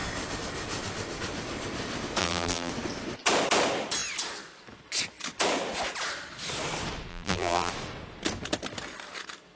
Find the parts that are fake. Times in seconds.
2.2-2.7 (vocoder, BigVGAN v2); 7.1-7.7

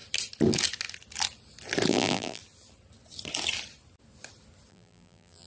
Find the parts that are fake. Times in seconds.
1.9-2.4 (vocoder, BigVGAN v2); 4.7-5.5